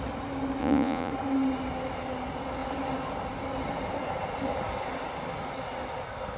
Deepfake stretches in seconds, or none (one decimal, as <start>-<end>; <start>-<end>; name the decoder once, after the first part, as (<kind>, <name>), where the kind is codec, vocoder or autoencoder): 0.6-1.1 (vocoder, Vocos)